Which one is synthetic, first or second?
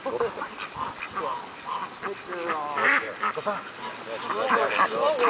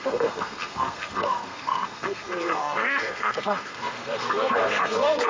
second